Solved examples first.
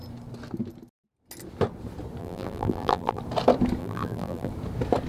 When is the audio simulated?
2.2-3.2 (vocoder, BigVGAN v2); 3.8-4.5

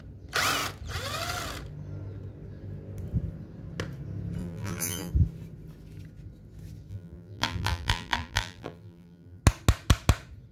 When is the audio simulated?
4.4-5.1 (vocoder, BigVGAN v2); 6.9-9.4

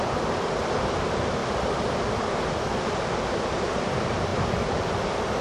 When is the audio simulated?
0.0-1.4 (vocoder, BigVGAN v2); 3.5-5.4

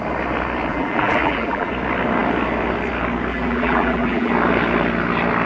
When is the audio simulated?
0.7-1.7 (vocoder, BigVGAN v2); 3.3-4.3

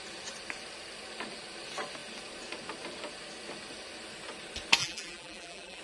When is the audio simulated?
4.8-5.8 (vocoder, BigVGAN v2)

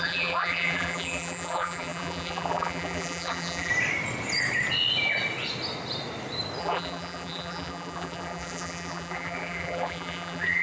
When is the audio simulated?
0.0-3.7 (vocoder, BigVGAN v2); 6.6-10.6

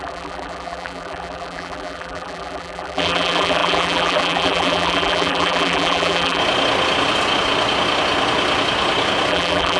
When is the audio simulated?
0.0-6.4 (vocoder, BigVGAN v2); 9.3-9.8

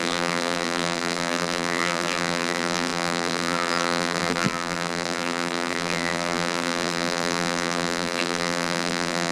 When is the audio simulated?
0.0-9.3 (vocoder, BigVGAN v2)